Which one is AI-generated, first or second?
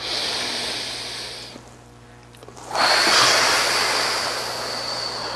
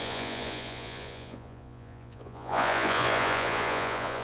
second